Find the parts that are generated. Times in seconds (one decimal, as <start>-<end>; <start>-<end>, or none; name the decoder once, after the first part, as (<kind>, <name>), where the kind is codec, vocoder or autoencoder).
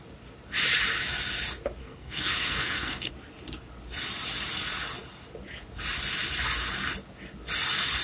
1.8-3.1 (codec, SNAC)